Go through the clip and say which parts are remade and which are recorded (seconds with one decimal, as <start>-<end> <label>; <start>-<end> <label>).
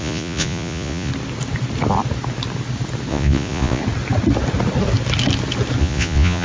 0.0-1.1 remade; 1.1-3.1 recorded; 3.1-3.8 remade; 3.8-5.8 recorded; 5.8-6.4 remade